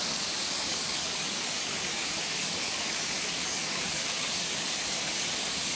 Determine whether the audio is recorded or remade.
remade